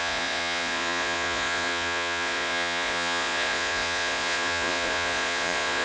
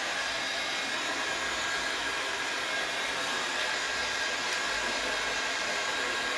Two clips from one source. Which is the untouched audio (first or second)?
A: second